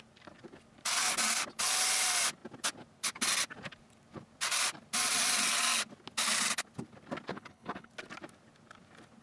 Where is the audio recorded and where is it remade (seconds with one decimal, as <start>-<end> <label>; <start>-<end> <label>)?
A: 0.0-7.3 recorded; 7.3-7.9 remade; 7.9-9.2 recorded